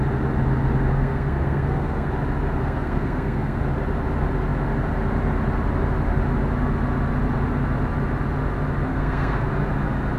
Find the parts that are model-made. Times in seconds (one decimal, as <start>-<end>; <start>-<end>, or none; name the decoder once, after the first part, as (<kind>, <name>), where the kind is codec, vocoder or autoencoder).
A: 0.9-2.1 (codec, SNAC); 2.6-3.6; 8.9-9.5